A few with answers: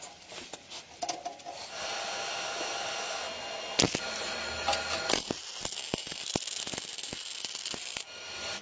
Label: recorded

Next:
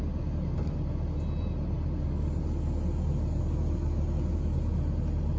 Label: recorded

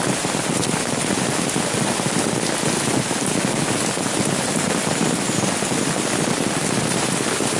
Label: recorded